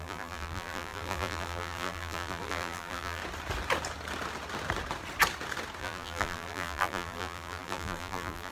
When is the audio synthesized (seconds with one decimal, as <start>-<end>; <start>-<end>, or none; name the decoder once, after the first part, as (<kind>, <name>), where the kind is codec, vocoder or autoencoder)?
0.0-3.2 (vocoder, BigVGAN v2); 5.8-8.5